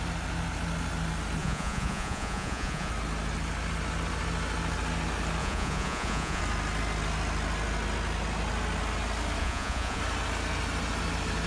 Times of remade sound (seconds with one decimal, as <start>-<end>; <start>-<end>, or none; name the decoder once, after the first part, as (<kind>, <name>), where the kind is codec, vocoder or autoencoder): 1.4-2.9 (vocoder, Vocos); 5.4-6.4; 9.4-10.0